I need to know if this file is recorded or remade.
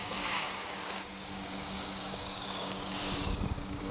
remade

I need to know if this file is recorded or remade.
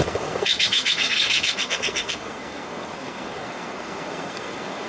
remade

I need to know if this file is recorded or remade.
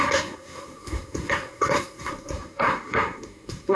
remade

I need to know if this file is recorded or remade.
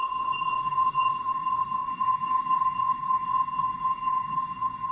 remade